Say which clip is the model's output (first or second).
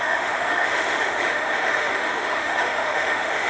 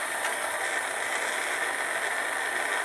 first